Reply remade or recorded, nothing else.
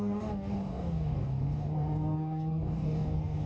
remade